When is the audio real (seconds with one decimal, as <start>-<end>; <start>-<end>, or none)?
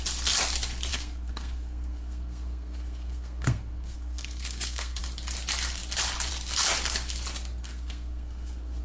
0.0-0.9; 5.0-7.6